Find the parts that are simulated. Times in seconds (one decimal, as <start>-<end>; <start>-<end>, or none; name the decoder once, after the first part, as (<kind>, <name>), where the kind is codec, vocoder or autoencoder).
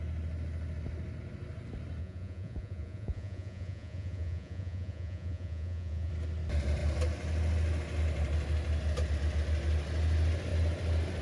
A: 2.0-6.1 (vocoder, Vocos)